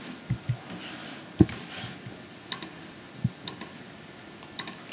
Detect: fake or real real